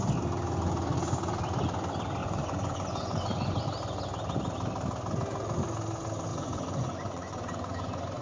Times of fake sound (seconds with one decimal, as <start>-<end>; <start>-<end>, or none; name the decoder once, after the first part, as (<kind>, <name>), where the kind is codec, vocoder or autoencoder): 2.2-3.6 (vocoder, Vocos); 6.3-8.2